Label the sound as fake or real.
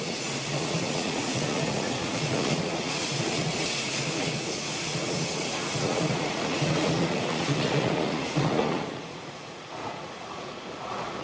fake